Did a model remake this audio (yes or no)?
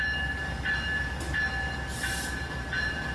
no